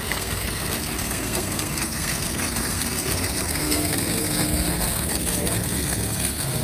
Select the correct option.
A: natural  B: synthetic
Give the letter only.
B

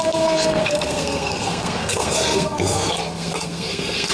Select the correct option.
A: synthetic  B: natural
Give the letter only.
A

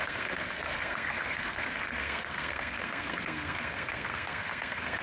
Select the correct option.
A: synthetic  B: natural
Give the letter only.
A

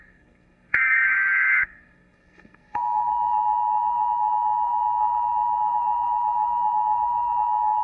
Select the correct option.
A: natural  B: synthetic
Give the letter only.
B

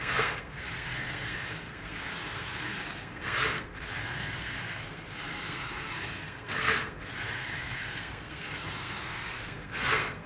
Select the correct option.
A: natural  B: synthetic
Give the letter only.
B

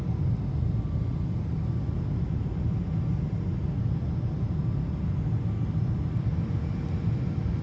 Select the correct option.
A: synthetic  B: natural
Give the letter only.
B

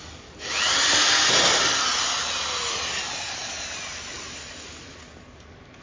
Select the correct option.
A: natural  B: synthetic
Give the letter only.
A